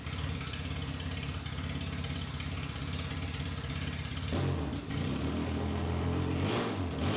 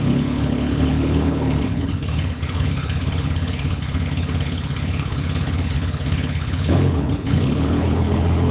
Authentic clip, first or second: first